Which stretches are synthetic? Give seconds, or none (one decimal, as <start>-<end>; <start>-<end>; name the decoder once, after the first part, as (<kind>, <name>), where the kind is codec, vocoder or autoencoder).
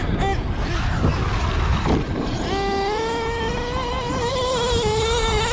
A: none